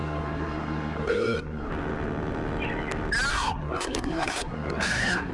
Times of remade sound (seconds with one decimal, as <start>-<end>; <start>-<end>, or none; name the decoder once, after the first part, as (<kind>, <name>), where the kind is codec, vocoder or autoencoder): 0.0-1.7 (codec, SNAC); 3.3-5.3